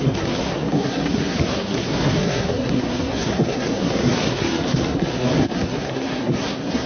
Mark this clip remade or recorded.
remade